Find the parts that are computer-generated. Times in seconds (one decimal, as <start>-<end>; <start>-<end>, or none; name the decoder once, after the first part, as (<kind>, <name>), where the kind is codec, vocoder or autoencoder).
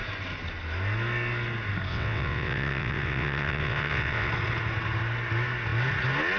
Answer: 1.9-4.3 (vocoder, WaveNeXt)